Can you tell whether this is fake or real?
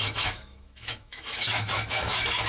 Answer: fake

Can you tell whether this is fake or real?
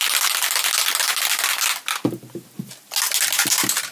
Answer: real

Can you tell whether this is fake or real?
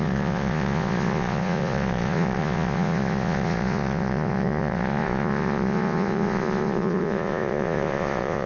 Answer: fake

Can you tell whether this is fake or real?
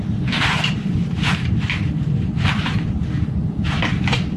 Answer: fake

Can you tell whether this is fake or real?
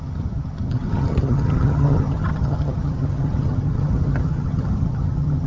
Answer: fake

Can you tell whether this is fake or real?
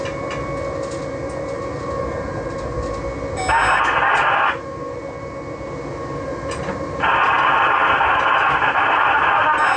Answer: real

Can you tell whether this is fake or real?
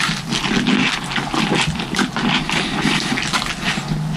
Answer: real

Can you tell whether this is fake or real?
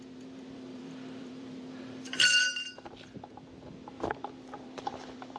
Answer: fake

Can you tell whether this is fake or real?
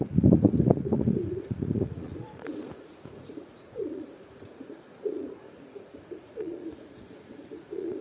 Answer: fake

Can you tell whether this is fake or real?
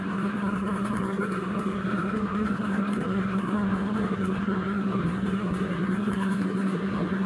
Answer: fake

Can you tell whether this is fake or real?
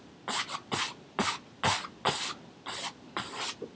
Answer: real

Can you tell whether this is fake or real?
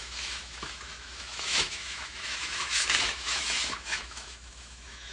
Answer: fake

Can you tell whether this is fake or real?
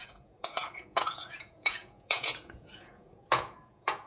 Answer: fake